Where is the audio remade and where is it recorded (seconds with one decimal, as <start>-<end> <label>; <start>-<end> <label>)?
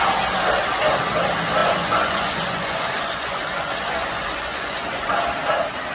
0.0-1.6 recorded; 1.6-5.1 remade; 5.1-5.9 recorded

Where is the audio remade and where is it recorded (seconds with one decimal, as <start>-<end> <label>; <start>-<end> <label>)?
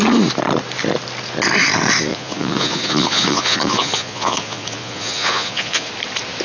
0.0-2.1 recorded; 2.1-5.9 remade; 5.9-6.4 recorded